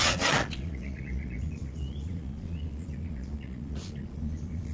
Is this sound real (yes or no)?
no